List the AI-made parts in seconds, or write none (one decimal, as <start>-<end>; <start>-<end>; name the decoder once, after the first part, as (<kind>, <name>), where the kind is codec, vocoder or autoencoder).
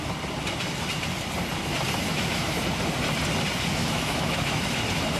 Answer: 2.1-2.6 (autoencoder, DAC-VAE); 3.7-4.6